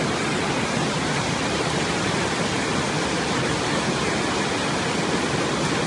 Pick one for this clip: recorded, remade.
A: recorded